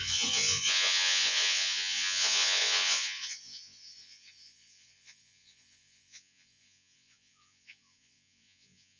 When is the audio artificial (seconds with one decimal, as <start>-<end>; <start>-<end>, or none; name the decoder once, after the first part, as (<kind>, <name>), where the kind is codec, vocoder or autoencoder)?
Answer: 0.0-9.0 (vocoder, Vocos)